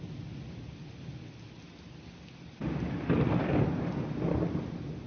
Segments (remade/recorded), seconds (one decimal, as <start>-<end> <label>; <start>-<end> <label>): 0.0-5.1 recorded